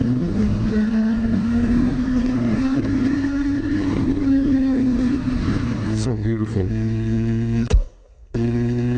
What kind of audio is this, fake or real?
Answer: fake